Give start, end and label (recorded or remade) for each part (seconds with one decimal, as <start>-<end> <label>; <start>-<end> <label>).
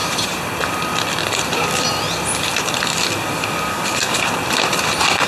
0.0-3.7 recorded; 3.7-4.4 remade; 4.4-5.3 recorded